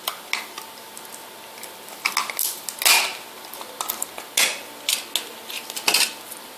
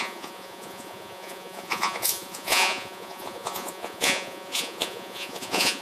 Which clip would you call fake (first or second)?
second